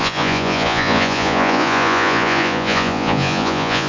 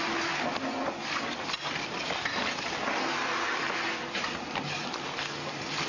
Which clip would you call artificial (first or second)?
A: first